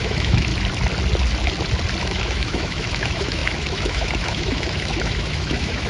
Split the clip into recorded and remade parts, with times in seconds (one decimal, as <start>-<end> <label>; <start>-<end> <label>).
0.0-0.5 remade; 0.5-2.0 recorded; 2.0-5.9 remade